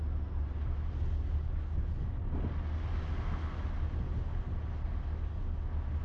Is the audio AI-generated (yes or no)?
no